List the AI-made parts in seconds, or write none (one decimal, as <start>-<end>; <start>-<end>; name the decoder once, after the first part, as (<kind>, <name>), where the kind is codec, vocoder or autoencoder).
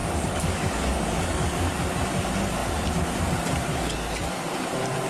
0.0-1.9 (codec, DAC); 3.7-4.5